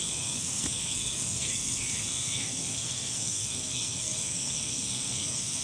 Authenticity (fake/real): fake